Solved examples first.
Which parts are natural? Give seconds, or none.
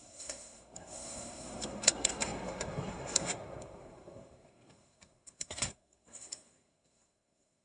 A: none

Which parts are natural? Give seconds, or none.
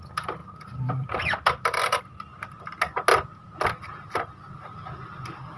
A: 0.0-0.4; 2.0-3.1; 4.5-5.6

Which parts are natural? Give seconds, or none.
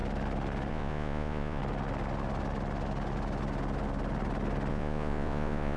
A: 0.0-0.7; 1.6-4.7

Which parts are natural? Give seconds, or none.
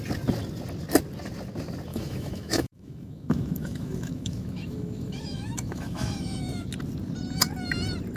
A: 0.0-1.9; 6.7-8.2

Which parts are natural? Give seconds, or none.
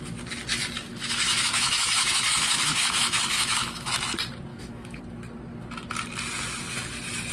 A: 0.0-0.9; 3.9-4.5; 5.0-7.3